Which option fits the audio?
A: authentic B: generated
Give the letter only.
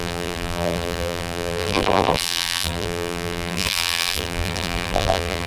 B